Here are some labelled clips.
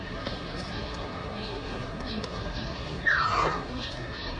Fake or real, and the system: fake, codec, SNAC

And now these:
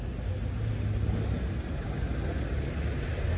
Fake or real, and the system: real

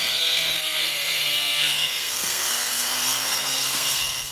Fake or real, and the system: fake, codec, SNAC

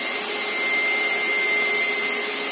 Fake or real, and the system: real